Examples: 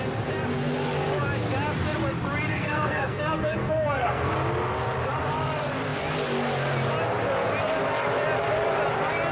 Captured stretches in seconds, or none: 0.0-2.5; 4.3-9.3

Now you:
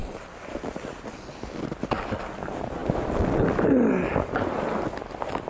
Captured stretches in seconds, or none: 0.0-5.5